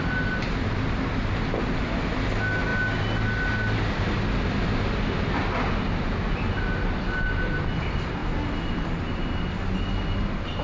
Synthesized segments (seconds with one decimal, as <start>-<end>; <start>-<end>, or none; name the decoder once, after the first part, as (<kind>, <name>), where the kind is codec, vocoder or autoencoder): none